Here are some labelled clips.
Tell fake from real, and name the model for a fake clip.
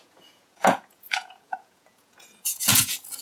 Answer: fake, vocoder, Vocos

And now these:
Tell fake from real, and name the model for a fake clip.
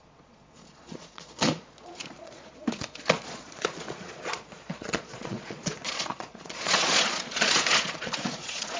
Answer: fake, vocoder, Vocos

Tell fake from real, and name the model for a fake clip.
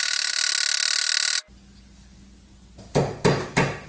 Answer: real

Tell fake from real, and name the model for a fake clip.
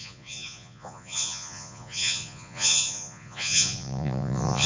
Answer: fake, vocoder, Vocos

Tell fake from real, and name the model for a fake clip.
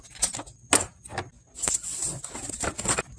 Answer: real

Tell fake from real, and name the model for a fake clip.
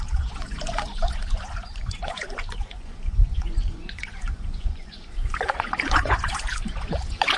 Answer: fake, vocoder, Vocos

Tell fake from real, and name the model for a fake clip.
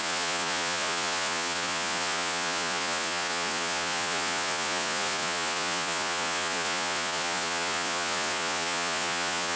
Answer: fake, vocoder, Vocos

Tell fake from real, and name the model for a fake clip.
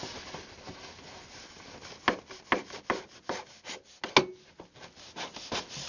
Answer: real